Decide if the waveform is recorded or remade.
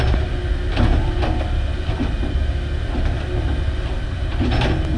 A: recorded